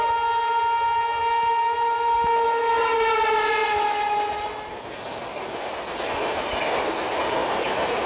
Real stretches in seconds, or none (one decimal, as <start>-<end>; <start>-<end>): 0.0-8.1